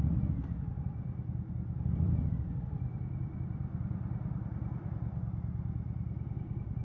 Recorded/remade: remade